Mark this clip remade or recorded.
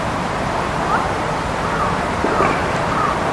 recorded